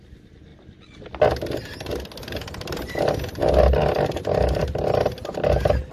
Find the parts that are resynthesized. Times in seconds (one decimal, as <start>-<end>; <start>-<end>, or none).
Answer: none